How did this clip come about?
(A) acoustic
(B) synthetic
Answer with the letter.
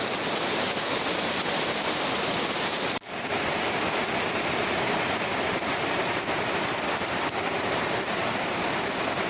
B